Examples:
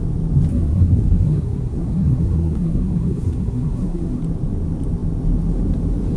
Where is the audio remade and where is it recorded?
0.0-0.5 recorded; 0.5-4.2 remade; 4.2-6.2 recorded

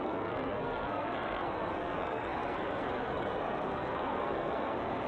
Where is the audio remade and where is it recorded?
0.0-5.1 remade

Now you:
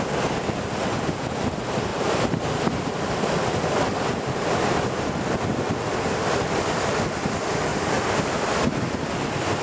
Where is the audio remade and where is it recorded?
0.0-1.9 recorded; 1.9-2.9 remade; 2.9-9.6 recorded

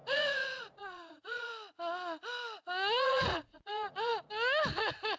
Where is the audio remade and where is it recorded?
0.0-1.5 remade; 1.5-3.0 recorded; 3.0-4.1 remade; 4.1-5.2 recorded

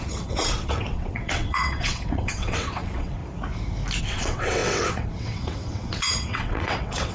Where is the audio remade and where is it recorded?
0.0-3.2 remade; 3.2-4.0 recorded; 4.0-7.1 remade

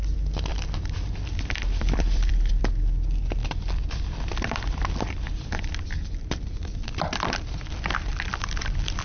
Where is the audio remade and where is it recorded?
0.0-0.5 recorded; 0.5-2.6 remade; 2.6-3.4 recorded; 3.4-9.0 remade

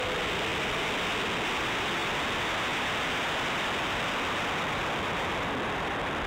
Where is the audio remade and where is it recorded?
0.0-6.3 recorded